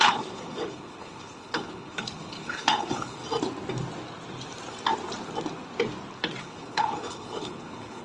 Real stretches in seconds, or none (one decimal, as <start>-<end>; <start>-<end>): 3.2-6.4